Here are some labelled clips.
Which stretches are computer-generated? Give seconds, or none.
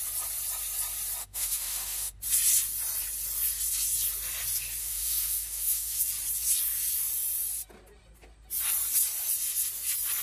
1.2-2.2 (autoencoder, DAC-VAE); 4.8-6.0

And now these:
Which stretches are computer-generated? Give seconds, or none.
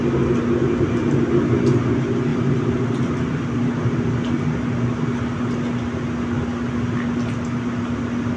none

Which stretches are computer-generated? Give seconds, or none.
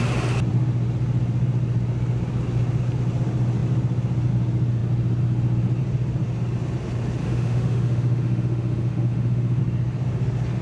7.2-9.6 (autoencoder, DAC-VAE)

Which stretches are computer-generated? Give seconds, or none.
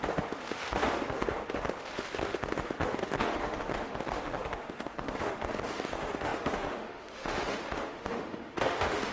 0.0-9.1 (autoencoder, DAC-VAE)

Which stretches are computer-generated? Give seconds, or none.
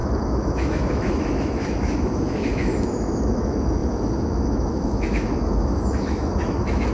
0.0-6.9 (autoencoder, DAC-VAE)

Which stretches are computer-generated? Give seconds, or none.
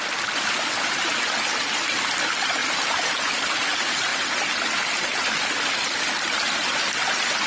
none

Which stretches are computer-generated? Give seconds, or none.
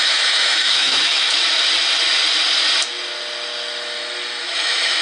0.0-1.4 (autoencoder, DAC-VAE); 4.4-5.0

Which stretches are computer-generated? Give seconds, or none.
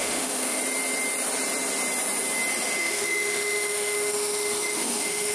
0.0-0.6 (autoencoder, DAC-VAE); 2.8-5.3